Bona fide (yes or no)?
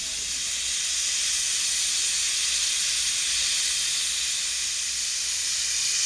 yes